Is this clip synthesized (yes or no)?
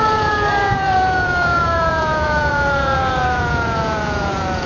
yes